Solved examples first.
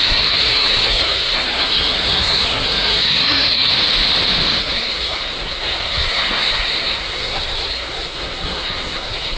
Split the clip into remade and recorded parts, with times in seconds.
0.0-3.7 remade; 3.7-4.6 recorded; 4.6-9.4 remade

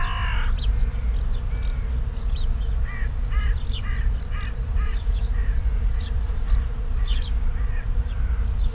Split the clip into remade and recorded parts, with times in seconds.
0.0-4.7 recorded; 4.7-5.4 remade; 5.4-6.0 recorded; 6.0-8.7 remade

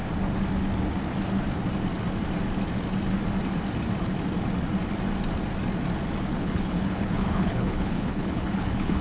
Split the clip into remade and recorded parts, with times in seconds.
0.0-6.3 recorded; 6.3-9.0 remade

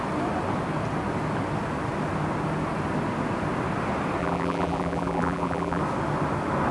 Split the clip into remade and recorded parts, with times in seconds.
0.0-4.2 recorded; 4.2-5.8 remade; 5.8-6.7 recorded